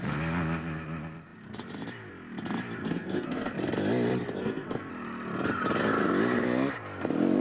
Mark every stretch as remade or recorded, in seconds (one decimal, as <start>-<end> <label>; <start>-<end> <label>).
0.0-2.8 recorded; 2.8-3.5 remade; 3.5-4.4 recorded; 4.4-4.9 remade; 4.9-7.4 recorded